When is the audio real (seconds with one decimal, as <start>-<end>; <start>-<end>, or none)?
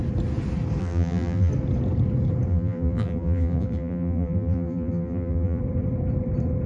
0.0-0.8; 1.5-2.5; 5.6-6.7